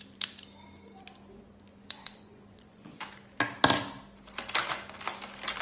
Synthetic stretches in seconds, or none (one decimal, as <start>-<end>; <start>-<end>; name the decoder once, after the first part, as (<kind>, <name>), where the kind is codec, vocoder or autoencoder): 1.7-3.0 (vocoder, Vocos)